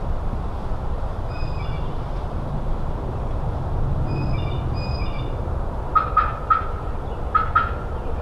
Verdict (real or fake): real